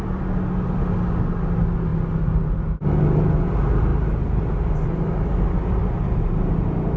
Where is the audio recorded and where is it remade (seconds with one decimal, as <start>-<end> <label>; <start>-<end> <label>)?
0.0-7.0 recorded